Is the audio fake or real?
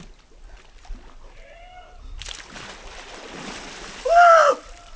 real